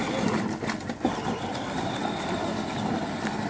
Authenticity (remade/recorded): recorded